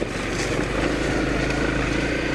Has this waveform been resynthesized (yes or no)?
no